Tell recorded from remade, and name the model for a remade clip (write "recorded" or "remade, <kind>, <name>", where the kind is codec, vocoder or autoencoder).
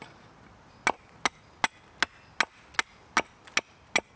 recorded